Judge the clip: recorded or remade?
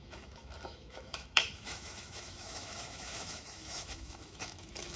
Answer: remade